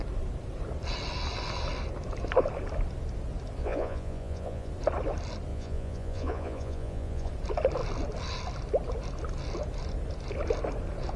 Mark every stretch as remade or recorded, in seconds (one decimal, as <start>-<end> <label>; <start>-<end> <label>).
0.0-3.6 recorded; 3.6-4.7 remade; 4.7-5.5 recorded; 5.5-7.3 remade; 7.3-11.2 recorded